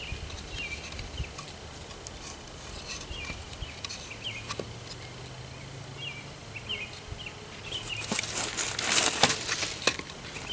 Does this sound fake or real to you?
real